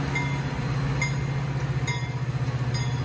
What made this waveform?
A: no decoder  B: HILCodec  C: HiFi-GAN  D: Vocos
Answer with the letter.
A